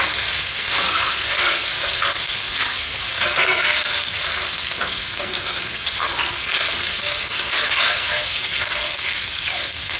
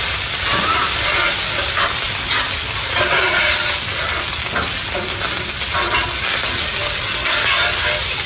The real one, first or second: second